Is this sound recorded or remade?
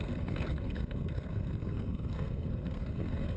remade